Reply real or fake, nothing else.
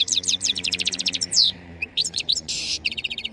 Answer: fake